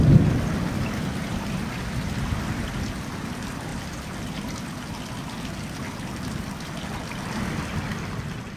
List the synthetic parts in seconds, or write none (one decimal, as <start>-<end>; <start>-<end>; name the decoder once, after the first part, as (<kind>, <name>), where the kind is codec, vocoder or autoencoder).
none